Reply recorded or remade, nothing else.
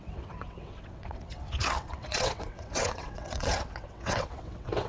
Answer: remade